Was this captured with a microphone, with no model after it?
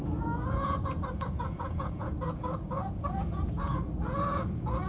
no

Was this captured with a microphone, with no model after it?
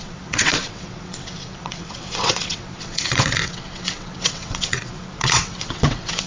no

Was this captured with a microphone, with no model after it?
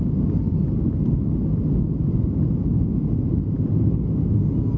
yes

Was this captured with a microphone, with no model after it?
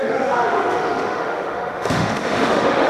no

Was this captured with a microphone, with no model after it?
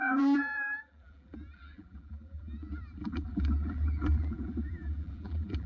no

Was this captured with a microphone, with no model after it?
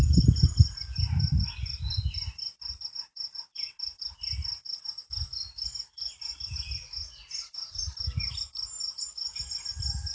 yes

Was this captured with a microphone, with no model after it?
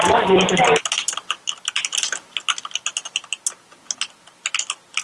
yes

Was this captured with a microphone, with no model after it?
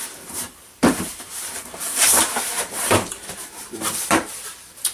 no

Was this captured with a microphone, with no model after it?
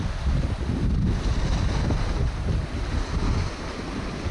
yes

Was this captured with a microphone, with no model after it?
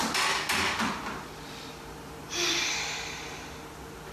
yes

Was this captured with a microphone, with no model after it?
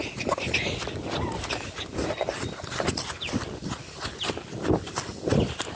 yes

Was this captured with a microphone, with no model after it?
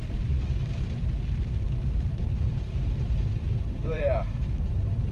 no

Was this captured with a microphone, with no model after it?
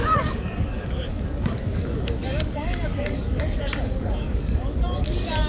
no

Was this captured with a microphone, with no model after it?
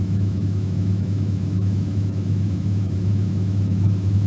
no